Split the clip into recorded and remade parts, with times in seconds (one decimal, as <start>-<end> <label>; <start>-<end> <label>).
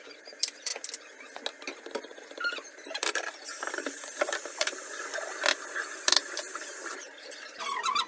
0.0-0.7 remade; 0.7-2.0 recorded; 2.0-5.1 remade; 5.1-5.7 recorded; 5.7-8.1 remade